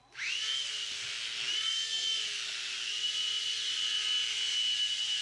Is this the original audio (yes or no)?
yes